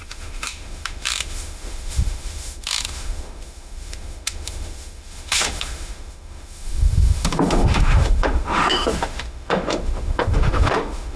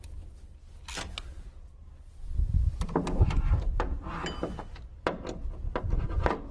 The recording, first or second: second